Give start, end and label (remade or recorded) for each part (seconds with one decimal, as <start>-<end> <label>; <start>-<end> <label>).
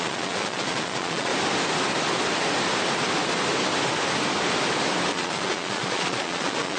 0.0-1.3 remade; 1.3-5.1 recorded; 5.1-6.8 remade